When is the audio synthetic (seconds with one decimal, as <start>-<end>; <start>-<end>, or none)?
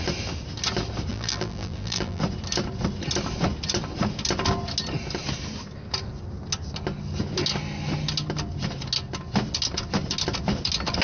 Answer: 1.1-2.2